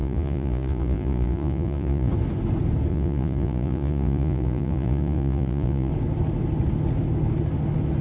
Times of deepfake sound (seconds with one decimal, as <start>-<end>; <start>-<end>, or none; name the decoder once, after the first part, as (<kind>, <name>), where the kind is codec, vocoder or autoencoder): 0.0-2.1 (vocoder, Vocos); 2.9-5.9